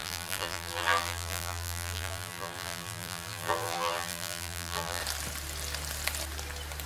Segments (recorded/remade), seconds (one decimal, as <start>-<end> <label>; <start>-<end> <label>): 0.0-5.0 remade; 5.0-6.9 recorded